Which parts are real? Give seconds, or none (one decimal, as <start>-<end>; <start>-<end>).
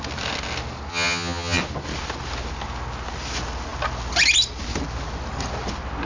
0.0-0.9; 1.6-6.1